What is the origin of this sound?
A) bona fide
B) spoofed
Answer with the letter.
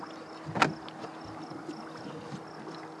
A